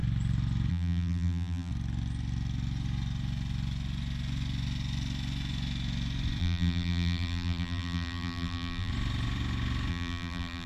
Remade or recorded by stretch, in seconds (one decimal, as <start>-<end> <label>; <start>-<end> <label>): 0.0-0.7 recorded; 0.7-1.7 remade; 1.7-6.4 recorded; 6.4-8.9 remade; 8.9-9.9 recorded; 9.9-10.7 remade